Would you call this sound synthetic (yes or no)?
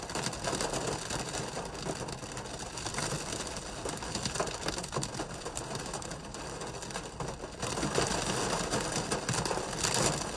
no